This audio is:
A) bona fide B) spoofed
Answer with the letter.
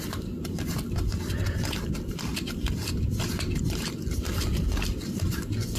B